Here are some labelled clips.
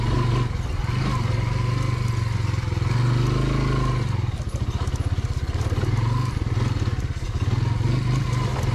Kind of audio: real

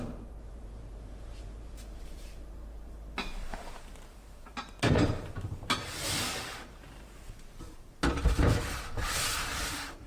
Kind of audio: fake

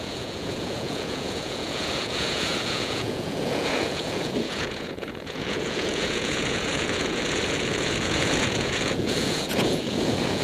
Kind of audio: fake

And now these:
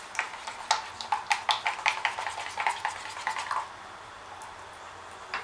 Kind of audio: real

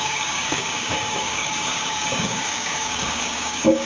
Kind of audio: fake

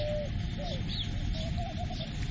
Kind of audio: real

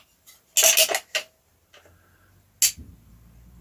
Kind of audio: real